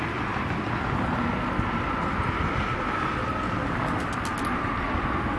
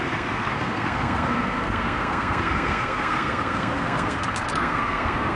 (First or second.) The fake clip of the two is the second